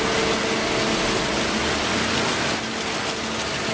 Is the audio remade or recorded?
recorded